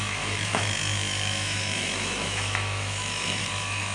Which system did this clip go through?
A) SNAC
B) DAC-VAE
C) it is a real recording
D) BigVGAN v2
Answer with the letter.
B